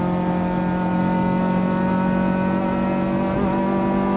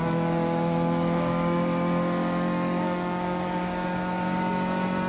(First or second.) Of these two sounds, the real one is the first